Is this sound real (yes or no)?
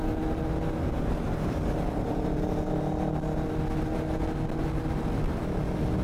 yes